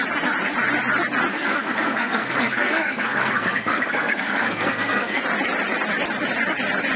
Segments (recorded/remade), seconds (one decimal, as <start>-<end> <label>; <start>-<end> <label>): 0.0-1.3 recorded; 1.3-5.2 remade; 5.2-7.0 recorded